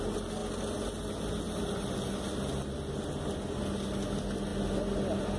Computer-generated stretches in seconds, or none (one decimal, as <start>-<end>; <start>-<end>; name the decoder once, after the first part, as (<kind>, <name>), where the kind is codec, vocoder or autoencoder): none